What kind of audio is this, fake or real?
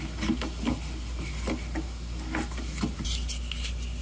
real